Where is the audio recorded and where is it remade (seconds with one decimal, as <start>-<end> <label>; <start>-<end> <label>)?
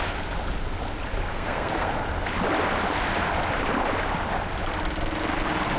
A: 0.0-1.3 recorded; 1.3-1.9 remade; 1.9-5.8 recorded